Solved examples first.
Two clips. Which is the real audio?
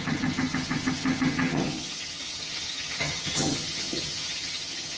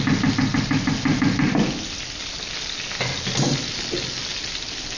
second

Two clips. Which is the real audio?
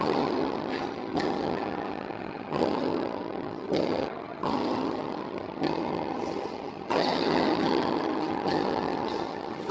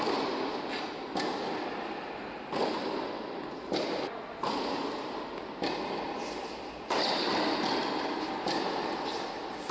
second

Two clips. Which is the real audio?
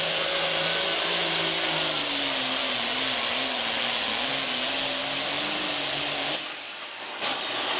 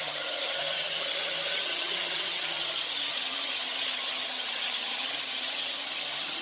first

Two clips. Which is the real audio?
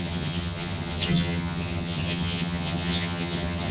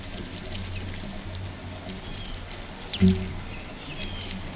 second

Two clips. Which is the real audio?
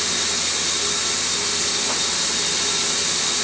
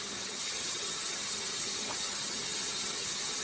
first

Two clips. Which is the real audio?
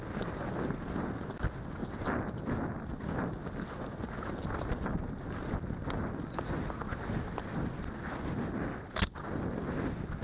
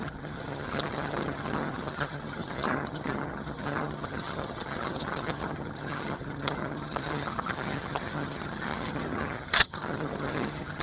first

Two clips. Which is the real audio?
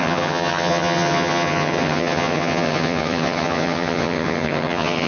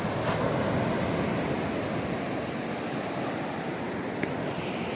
second